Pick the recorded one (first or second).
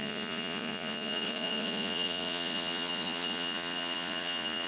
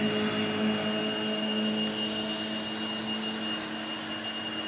second